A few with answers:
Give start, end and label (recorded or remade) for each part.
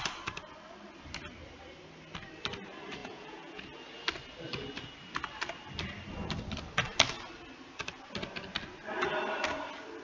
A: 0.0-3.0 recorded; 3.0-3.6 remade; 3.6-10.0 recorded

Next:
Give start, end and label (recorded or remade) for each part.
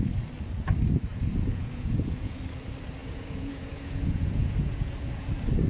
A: 0.0-1.1 recorded; 1.1-2.4 remade; 2.4-3.0 recorded; 3.0-5.3 remade; 5.3-5.7 recorded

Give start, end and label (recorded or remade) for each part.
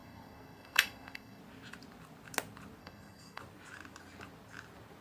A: 0.0-1.4 remade; 1.4-2.8 recorded; 2.8-3.4 remade; 3.4-5.0 recorded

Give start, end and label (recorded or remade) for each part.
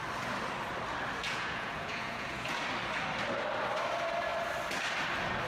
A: 0.0-1.2 recorded; 1.2-2.6 remade; 2.6-5.5 recorded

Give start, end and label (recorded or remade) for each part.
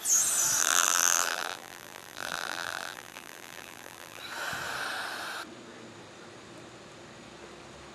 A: 0.0-0.6 recorded; 0.6-4.2 remade; 4.2-7.9 recorded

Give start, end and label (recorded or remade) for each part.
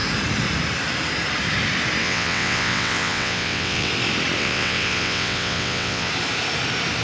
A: 0.0-2.0 recorded; 2.0-3.9 remade; 3.9-4.4 recorded; 4.4-6.1 remade; 6.1-7.0 recorded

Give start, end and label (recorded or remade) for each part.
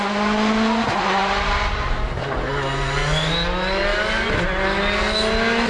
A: 0.0-5.7 recorded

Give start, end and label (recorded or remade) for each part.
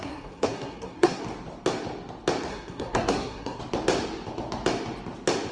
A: 0.0-1.2 remade; 1.2-2.5 recorded; 2.5-3.6 remade; 3.6-5.5 recorded